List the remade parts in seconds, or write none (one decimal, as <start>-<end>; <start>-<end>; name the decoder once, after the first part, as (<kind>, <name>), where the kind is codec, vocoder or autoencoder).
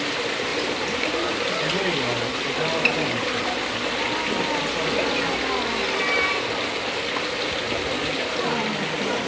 0.5-1.5 (vocoder, BigVGAN v2)